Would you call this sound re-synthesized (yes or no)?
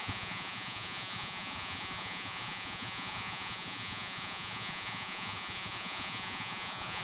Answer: yes